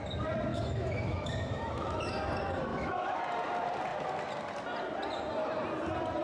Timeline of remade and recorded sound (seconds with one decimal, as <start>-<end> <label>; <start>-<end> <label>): 0.0-0.5 recorded; 0.5-2.0 remade; 2.0-2.7 recorded; 2.7-3.2 remade; 3.2-6.2 recorded